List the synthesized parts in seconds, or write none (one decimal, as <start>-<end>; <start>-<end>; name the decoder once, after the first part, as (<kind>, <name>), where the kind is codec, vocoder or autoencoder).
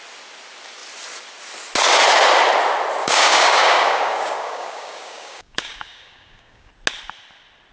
3.0-6.7 (codec, DAC)